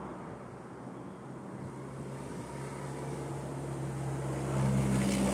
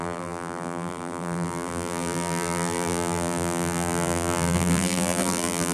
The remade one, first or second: second